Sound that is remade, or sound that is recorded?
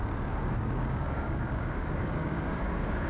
remade